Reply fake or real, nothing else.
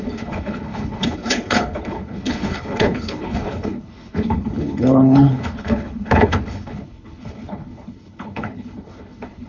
fake